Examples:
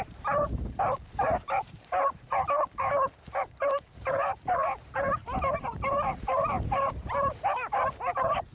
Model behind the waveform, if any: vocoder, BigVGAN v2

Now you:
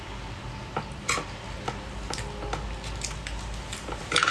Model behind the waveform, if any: none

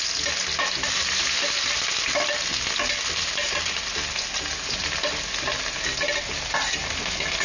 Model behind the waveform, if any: none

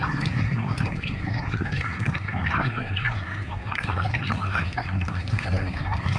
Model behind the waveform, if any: codec, SNAC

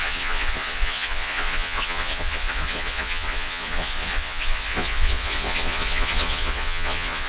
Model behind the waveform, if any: vocoder, Vocos